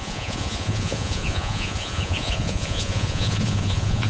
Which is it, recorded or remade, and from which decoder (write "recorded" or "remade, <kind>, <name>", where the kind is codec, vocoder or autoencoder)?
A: remade, vocoder, Vocos